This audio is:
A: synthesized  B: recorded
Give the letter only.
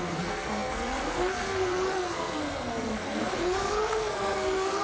A